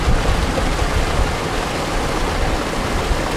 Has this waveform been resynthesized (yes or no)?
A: no